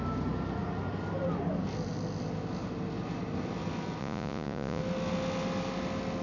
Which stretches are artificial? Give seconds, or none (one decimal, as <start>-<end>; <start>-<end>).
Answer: 4.0-4.8